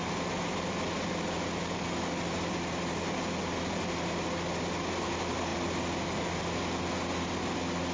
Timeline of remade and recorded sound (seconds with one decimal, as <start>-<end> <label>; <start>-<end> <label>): 0.0-7.9 recorded